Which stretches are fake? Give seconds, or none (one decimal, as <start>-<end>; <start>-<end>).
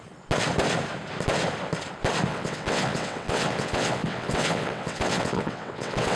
2.3-6.2